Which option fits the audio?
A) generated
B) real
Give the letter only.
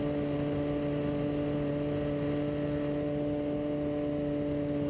B